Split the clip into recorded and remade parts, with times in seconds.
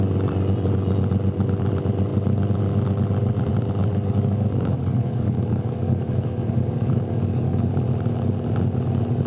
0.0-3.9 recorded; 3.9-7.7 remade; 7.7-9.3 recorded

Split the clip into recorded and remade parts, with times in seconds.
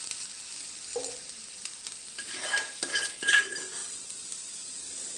0.0-2.9 recorded; 2.9-3.4 remade; 3.4-5.2 recorded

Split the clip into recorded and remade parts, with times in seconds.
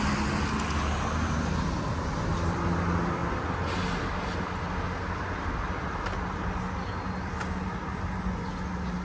0.0-9.0 recorded